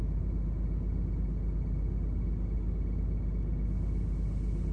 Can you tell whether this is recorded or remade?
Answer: recorded